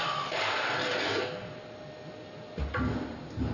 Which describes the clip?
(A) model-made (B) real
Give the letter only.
B